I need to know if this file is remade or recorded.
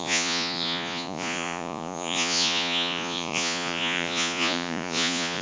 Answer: remade